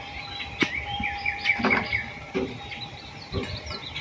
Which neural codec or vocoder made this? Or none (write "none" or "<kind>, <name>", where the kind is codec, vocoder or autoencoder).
vocoder, BigVGAN v2